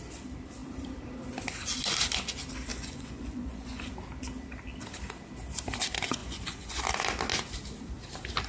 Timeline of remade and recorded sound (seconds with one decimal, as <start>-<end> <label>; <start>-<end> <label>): 0.0-2.7 recorded; 2.7-3.8 remade; 3.8-6.2 recorded; 6.2-6.8 remade; 6.8-8.5 recorded